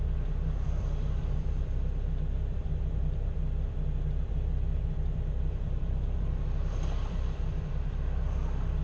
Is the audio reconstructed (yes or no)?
yes